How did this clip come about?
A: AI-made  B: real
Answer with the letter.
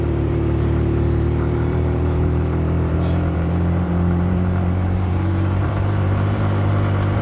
A